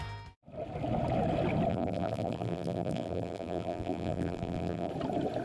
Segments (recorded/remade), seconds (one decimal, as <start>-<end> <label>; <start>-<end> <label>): 0.0-1.7 recorded; 1.7-4.9 remade; 4.9-5.4 recorded